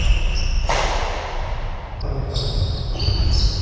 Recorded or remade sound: recorded